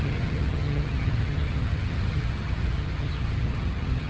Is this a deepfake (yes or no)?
yes